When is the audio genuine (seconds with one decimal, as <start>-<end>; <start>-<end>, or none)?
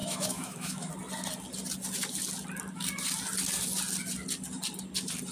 0.9-5.3